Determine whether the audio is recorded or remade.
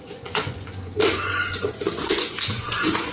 remade